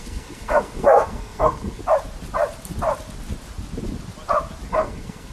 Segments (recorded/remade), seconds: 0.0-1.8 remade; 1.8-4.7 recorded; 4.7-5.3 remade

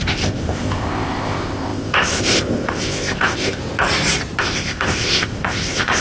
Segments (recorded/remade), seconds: 0.0-3.6 remade; 3.6-4.4 recorded; 4.4-6.0 remade

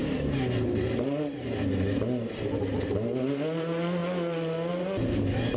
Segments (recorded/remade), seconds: 0.0-5.6 recorded

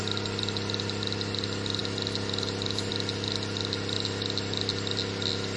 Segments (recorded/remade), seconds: 0.0-5.6 recorded